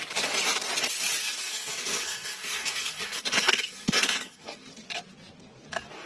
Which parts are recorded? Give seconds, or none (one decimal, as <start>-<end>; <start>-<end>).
0.0-1.2; 4.7-6.1